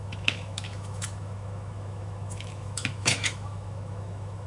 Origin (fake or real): fake